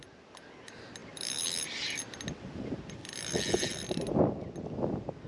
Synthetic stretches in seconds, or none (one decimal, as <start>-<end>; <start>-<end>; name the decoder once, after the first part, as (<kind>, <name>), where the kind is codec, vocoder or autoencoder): 1.0-1.8 (vocoder, BigVGAN v2); 3.0-3.9